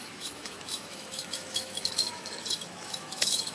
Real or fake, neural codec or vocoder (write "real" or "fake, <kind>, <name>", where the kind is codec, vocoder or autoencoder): fake, autoencoder, DAC-VAE